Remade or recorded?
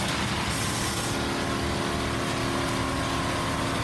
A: recorded